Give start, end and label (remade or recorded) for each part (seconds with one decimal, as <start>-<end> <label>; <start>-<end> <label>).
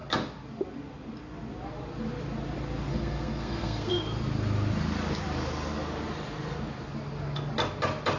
0.0-2.9 recorded; 2.9-3.9 remade; 3.9-8.2 recorded